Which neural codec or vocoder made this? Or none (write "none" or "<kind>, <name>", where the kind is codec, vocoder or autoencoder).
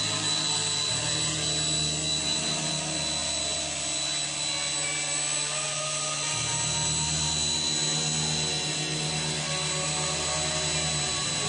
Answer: none